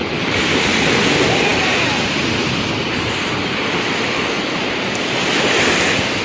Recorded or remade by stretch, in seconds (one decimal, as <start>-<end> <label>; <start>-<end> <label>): 0.0-6.2 recorded